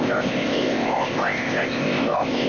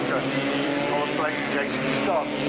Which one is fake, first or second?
first